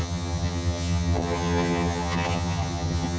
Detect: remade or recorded remade